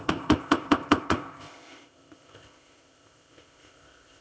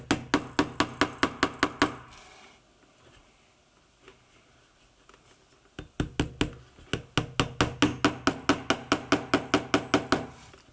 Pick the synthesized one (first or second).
first